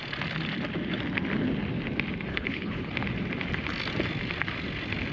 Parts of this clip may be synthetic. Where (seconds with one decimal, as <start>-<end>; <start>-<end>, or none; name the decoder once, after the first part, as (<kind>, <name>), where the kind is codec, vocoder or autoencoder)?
2.3-2.9 (codec, HILCodec)